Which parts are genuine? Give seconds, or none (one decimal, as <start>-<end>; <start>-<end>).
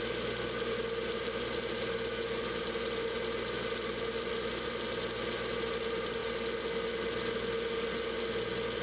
0.0-8.8